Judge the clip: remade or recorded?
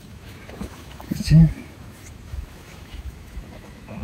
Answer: remade